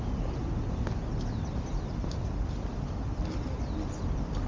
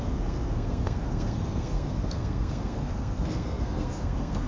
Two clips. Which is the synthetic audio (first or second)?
second